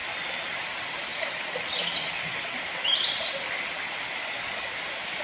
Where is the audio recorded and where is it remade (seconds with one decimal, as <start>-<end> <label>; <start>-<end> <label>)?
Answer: 0.0-4.2 recorded; 4.2-4.8 remade; 4.8-5.2 recorded